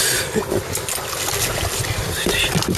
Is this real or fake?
real